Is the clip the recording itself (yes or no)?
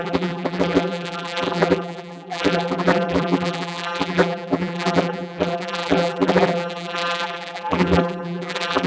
no